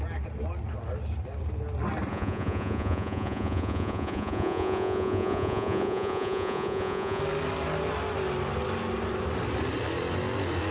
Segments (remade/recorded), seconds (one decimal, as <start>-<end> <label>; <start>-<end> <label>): 0.0-2.1 recorded; 2.1-7.2 remade; 7.2-10.7 recorded